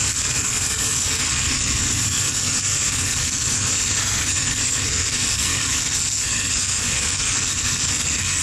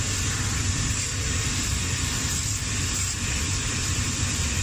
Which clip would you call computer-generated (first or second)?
first